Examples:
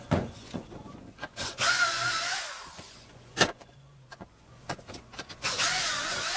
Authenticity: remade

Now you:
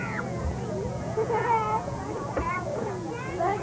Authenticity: remade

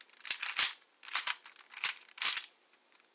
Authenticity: recorded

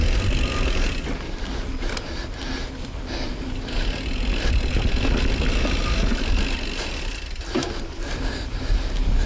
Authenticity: recorded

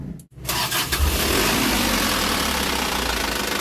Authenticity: recorded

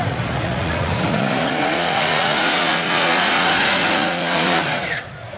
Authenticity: remade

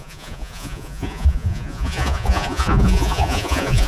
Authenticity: remade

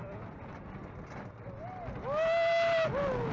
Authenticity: recorded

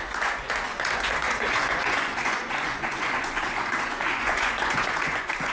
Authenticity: remade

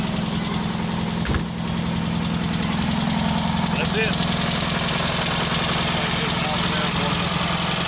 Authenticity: recorded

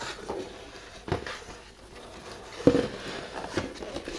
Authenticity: recorded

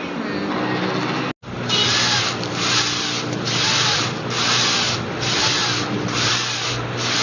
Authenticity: recorded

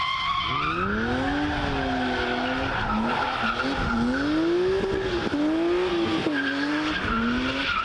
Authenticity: recorded